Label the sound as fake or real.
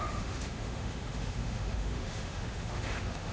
fake